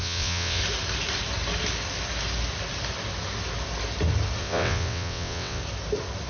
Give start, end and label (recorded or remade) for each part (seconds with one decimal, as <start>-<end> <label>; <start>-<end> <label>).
0.0-0.6 remade; 0.6-4.4 recorded; 4.4-5.6 remade; 5.6-6.3 recorded